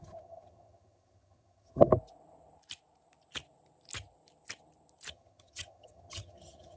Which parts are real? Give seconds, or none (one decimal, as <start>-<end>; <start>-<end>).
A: 1.9-5.1